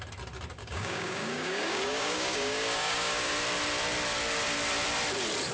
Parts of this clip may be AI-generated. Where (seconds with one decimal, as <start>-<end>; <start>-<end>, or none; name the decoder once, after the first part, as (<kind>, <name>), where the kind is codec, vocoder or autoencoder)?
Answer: 0.6-3.3 (codec, DAC)